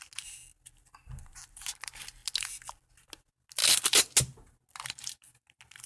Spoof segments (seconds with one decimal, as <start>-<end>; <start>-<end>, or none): none